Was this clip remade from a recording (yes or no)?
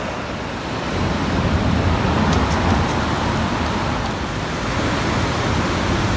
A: no